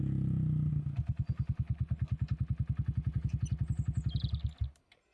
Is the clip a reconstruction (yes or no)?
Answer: no